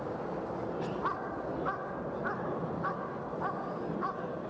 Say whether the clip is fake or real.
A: real